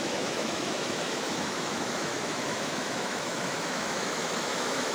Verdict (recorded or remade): remade